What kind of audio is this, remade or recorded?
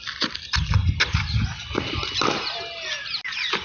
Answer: recorded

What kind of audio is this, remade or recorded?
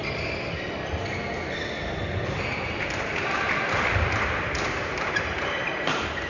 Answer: recorded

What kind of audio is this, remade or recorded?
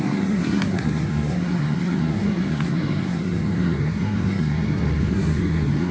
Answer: remade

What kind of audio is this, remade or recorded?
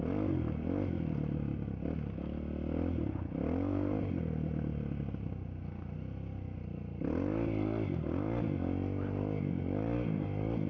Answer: recorded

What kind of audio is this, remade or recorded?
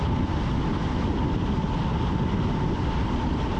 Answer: recorded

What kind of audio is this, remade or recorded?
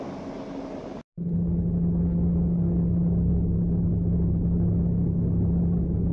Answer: recorded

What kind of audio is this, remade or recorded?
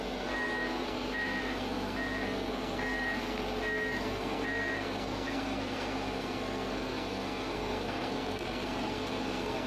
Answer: remade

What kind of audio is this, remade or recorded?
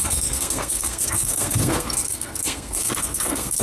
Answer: remade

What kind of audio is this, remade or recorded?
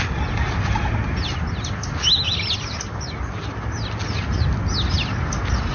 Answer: recorded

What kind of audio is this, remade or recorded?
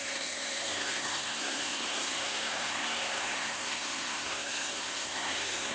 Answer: remade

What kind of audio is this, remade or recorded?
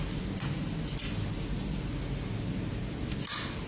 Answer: recorded